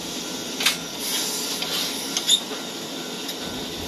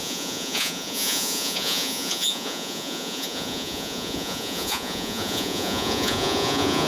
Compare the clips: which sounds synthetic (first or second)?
second